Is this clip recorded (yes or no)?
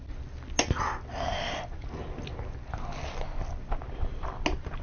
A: yes